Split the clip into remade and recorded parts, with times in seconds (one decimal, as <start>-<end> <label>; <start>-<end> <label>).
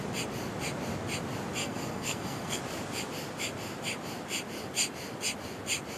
0.0-1.6 recorded; 1.6-2.6 remade; 2.6-6.0 recorded